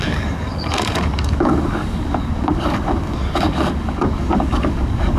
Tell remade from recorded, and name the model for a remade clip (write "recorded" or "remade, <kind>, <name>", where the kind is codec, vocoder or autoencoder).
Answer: remade, codec, DAC